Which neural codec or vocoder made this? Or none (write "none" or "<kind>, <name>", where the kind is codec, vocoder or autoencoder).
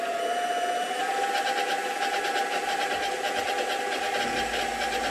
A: none